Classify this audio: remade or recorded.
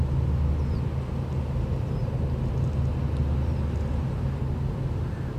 recorded